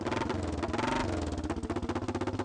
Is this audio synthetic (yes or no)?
no